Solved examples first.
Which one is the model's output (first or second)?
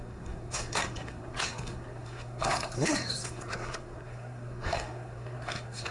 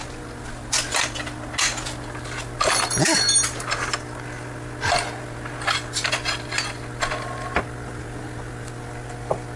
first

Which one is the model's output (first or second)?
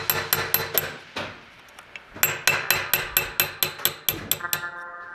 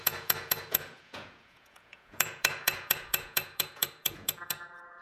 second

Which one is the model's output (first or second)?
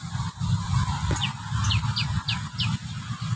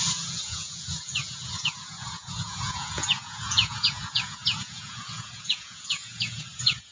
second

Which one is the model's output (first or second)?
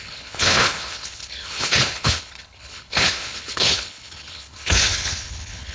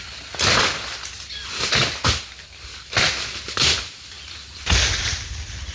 first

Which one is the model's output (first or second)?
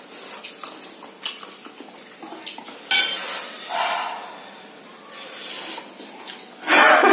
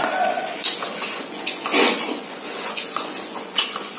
second